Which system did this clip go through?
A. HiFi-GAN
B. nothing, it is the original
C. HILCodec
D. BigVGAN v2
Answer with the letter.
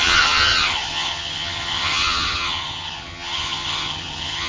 A